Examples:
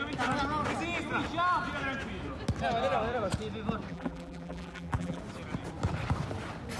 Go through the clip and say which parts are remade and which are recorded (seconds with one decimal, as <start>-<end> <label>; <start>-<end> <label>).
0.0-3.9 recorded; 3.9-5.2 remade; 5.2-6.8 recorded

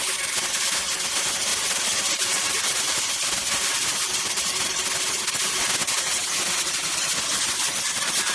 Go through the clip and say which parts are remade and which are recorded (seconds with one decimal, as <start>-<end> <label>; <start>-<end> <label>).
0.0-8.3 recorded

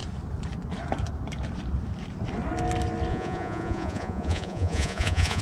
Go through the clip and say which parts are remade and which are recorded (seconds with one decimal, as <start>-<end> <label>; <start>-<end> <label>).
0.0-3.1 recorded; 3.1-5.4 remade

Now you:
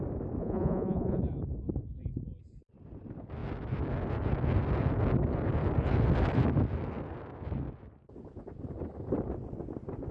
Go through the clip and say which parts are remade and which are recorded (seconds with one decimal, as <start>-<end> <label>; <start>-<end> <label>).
0.0-0.4 recorded; 0.4-1.2 remade; 1.2-10.1 recorded

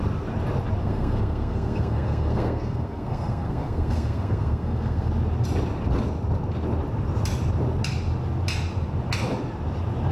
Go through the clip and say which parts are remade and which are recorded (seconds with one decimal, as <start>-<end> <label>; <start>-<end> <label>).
0.0-0.8 recorded; 0.8-5.1 remade; 5.1-10.1 recorded

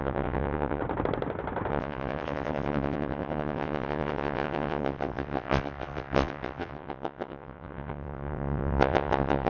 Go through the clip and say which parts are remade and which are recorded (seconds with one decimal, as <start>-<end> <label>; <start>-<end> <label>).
0.0-0.8 remade; 0.8-1.7 recorded; 1.7-9.5 remade

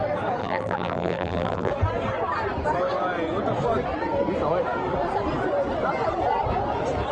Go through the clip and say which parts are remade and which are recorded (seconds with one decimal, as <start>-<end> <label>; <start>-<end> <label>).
0.0-0.4 recorded; 0.4-1.7 remade; 1.7-7.1 recorded